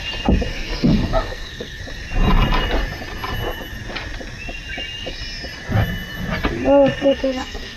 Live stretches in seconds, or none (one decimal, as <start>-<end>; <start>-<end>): 0.0-0.5; 1.8-7.1